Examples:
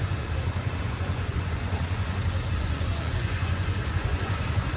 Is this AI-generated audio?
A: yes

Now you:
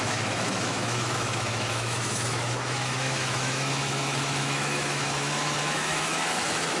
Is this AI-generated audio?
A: yes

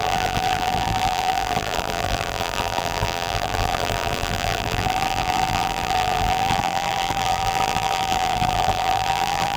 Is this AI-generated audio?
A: yes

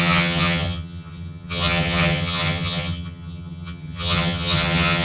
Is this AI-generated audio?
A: yes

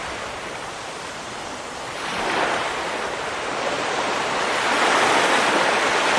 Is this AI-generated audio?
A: no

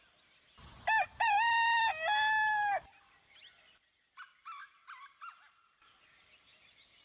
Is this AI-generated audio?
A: no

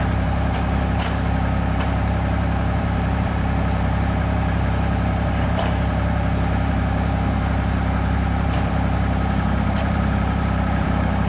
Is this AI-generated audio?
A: yes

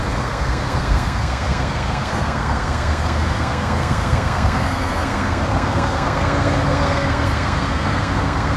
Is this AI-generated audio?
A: yes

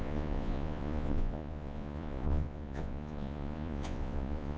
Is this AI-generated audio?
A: yes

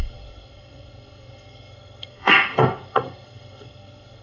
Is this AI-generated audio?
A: yes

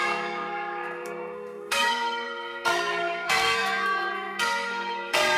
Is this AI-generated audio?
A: yes